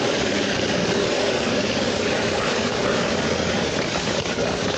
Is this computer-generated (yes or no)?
yes